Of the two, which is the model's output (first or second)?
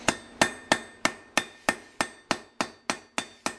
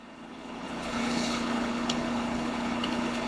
second